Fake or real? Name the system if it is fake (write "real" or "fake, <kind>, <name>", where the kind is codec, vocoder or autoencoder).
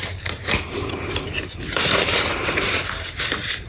fake, vocoder, BigVGAN v2